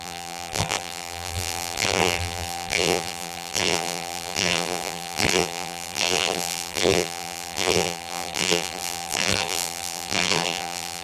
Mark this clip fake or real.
fake